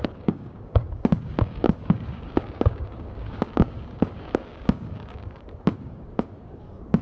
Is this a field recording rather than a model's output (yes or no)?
no